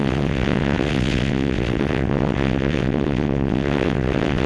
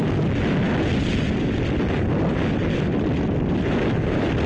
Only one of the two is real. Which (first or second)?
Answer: second